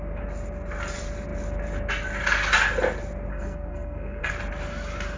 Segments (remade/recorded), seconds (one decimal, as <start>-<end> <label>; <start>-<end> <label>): 0.0-3.3 recorded; 3.3-4.3 remade; 4.3-5.2 recorded